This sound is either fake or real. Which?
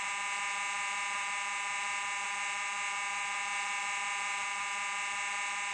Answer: real